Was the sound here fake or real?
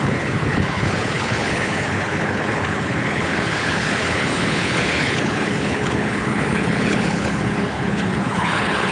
fake